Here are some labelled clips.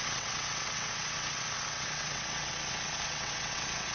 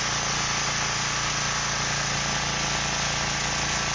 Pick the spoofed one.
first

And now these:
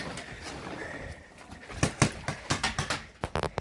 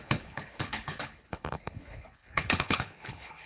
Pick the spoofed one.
second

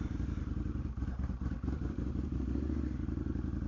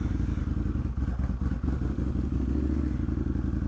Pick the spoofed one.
first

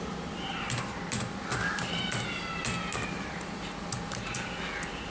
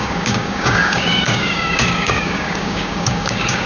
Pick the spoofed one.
second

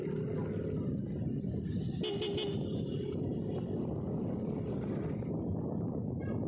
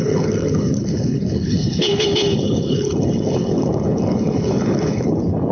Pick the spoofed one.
second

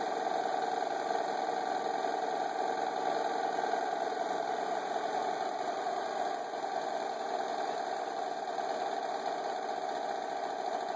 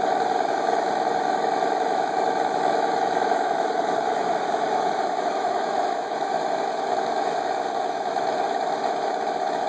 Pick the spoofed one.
second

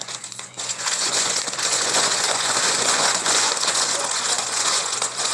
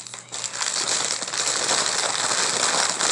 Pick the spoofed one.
first